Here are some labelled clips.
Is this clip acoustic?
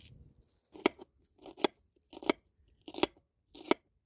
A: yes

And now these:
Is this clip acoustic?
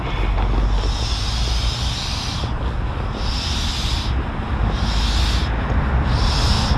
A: yes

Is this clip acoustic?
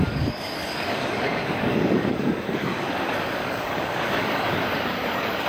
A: no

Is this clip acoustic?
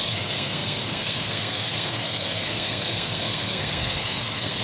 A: no